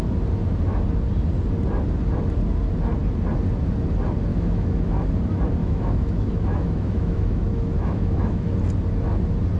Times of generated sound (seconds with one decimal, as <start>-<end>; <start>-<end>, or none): 4.3-4.9; 5.6-8.5